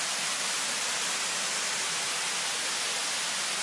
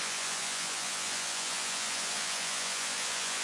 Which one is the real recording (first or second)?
first